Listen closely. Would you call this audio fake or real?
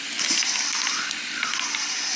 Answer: real